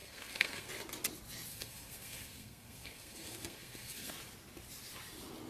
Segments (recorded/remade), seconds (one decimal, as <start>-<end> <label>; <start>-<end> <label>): 0.0-0.7 remade; 0.7-1.5 recorded; 1.5-4.1 remade; 4.1-5.5 recorded